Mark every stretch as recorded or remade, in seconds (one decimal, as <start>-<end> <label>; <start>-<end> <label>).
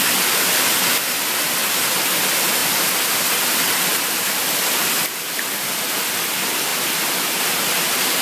0.0-8.2 recorded